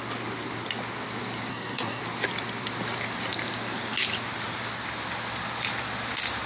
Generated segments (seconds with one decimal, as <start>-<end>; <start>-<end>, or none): 1.5-2.0